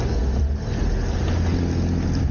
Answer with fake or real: real